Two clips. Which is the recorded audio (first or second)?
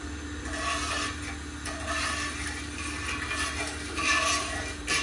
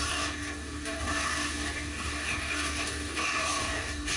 first